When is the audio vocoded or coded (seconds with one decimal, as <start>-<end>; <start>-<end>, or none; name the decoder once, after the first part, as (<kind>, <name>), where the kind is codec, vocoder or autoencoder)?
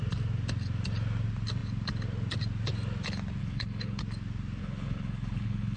3.4-4.0 (codec, HILCodec); 4.6-5.8